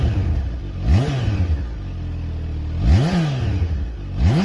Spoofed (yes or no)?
no